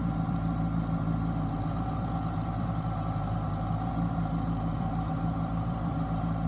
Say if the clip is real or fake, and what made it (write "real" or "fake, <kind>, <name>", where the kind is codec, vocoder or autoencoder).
fake, vocoder, BigVGAN v2